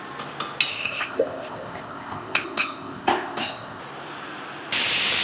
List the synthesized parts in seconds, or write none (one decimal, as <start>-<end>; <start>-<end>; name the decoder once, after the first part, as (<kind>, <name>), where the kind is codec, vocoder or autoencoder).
0.7-3.8 (codec, ZipCodec)